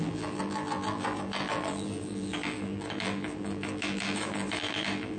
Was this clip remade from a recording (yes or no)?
yes